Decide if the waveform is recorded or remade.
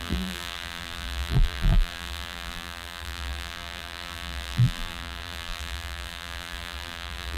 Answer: remade